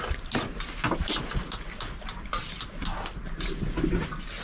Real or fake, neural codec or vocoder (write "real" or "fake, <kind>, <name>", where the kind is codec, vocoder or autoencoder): real